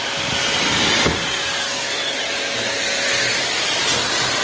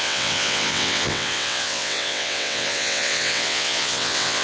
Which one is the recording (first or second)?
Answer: first